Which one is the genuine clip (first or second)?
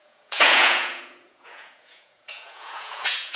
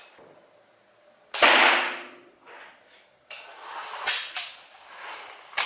second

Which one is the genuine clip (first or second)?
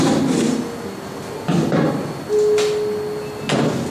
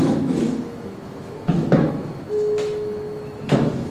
first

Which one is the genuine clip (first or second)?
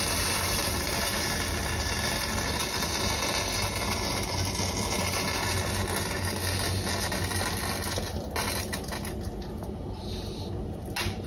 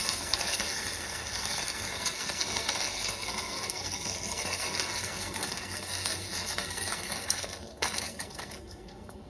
first